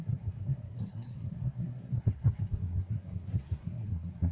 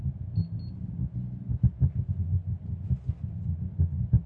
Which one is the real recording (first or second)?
second